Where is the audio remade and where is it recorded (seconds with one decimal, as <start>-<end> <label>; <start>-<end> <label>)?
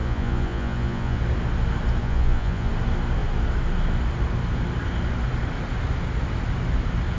0.0-1.2 remade; 1.2-2.0 recorded; 2.0-2.7 remade; 2.7-7.2 recorded